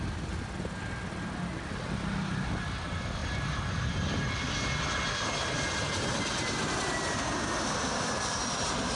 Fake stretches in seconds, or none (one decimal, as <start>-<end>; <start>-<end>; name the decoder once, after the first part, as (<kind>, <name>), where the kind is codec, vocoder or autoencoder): none